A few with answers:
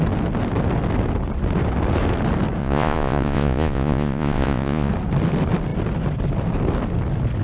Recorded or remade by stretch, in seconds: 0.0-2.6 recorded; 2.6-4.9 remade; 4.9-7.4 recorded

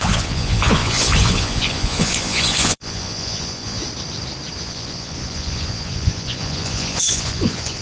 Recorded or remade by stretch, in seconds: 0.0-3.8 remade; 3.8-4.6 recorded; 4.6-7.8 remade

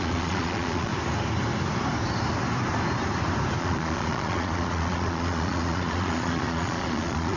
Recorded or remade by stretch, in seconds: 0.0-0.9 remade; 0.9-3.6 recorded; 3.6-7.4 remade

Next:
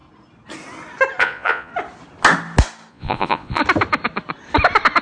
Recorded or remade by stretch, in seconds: 0.0-1.2 recorded; 1.2-1.7 remade; 1.7-2.9 recorded; 2.9-3.6 remade; 3.6-5.0 recorded